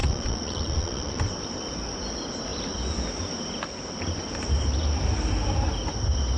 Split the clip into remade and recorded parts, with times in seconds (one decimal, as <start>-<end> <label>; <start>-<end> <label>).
0.0-1.2 remade; 1.2-6.4 recorded